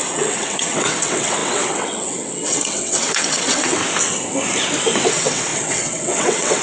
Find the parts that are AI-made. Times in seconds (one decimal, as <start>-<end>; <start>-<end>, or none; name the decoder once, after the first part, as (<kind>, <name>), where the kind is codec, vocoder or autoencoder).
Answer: 0.0-3.8 (vocoder, WaveNeXt); 5.1-6.6